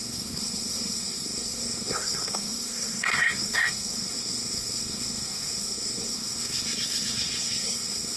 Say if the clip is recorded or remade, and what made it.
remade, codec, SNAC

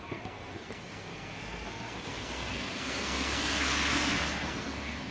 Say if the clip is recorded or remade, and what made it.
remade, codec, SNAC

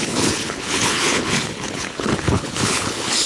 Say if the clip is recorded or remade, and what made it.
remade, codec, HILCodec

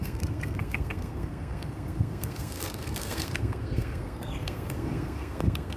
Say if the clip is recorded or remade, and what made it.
remade, codec, SNAC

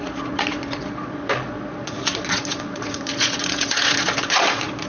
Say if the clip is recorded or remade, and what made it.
remade, vocoder, Vocos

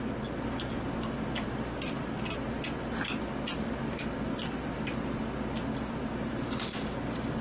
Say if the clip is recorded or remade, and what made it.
recorded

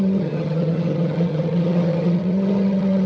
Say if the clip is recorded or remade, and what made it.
remade, vocoder, HiFi-GAN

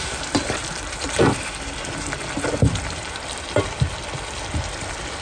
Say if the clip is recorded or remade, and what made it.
recorded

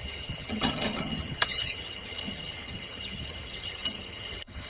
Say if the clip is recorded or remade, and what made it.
remade, vocoder, HiFi-GAN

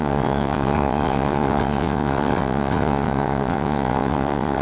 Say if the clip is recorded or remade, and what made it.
remade, vocoder, WaveNeXt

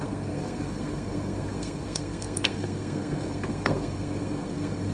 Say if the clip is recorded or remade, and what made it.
remade, codec, SNAC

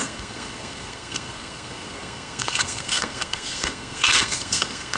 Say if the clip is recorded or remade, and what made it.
remade, codec, SNAC